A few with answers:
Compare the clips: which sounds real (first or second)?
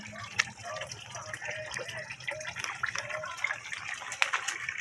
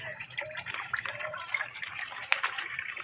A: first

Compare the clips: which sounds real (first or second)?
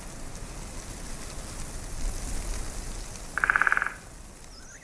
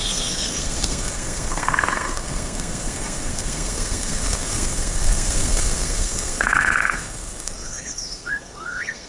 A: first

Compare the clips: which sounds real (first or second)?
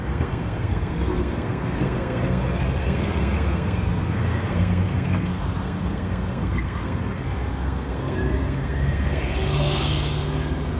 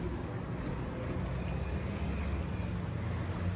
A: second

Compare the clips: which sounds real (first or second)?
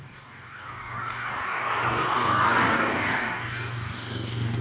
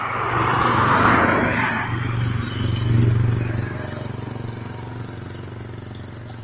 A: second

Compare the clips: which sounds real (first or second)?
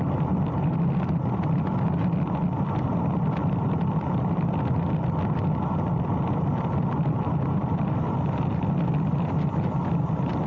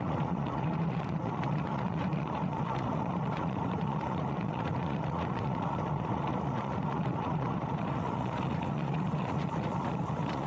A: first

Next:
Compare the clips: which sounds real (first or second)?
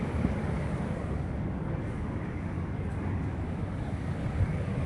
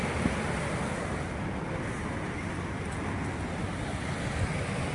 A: second